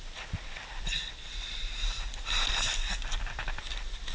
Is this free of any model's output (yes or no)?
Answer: yes